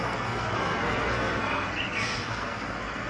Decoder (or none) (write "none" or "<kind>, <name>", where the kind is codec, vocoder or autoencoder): codec, SNAC